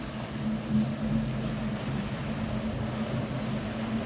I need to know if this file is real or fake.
real